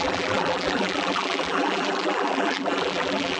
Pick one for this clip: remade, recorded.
remade